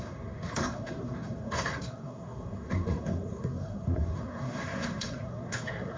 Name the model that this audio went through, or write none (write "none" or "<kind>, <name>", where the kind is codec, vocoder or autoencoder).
codec, SNAC